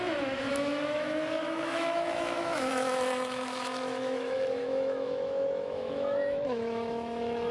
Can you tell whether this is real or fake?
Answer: fake